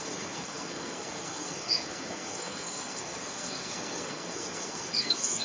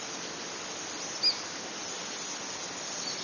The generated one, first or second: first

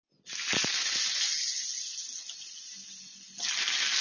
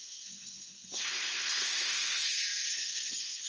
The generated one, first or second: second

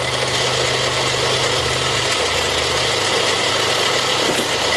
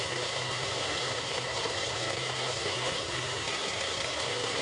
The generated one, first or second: second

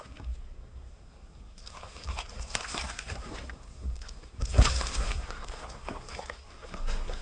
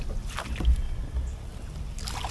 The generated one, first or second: first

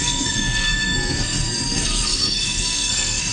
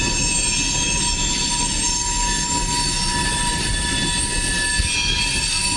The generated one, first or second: first